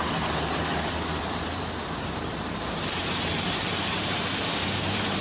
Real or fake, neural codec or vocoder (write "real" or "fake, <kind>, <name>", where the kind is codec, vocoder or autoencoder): fake, vocoder, BigVGAN v2